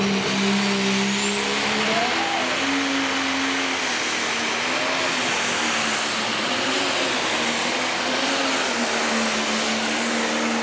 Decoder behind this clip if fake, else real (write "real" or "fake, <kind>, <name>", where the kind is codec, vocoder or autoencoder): real